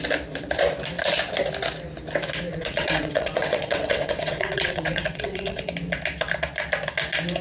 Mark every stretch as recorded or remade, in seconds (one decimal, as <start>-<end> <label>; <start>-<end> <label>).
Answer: 0.0-2.5 recorded; 2.5-5.7 remade; 5.7-7.4 recorded